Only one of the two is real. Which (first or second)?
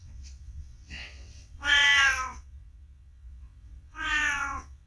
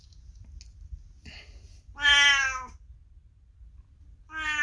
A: second